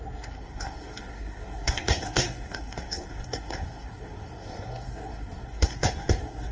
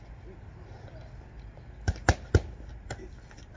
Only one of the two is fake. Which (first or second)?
first